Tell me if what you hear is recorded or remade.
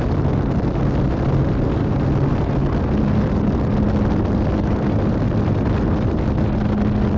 recorded